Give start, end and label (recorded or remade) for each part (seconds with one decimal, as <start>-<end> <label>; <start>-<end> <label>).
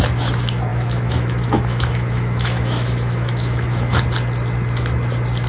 0.0-0.7 recorded; 0.7-4.0 remade; 4.0-5.5 recorded